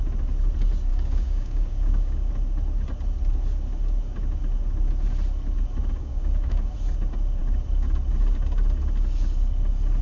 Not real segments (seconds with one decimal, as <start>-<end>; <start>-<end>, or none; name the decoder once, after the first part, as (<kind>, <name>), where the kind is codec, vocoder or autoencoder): 0.9-2.3 (codec, DAC); 6.0-6.7

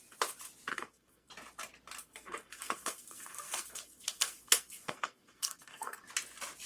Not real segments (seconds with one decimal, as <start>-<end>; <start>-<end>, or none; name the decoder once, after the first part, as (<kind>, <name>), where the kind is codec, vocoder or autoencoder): 0.7-1.3 (codec, SNAC); 2.0-6.0

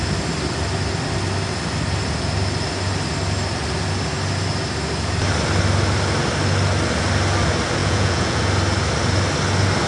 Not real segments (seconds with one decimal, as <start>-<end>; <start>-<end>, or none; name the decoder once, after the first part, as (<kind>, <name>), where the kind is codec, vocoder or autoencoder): 7.8-8.4 (vocoder, Vocos)